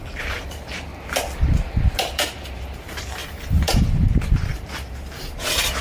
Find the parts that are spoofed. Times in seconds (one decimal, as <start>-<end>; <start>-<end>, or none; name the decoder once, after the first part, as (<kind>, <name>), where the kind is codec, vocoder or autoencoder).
0.0-0.9 (vocoder, BigVGAN v2); 2.0-5.8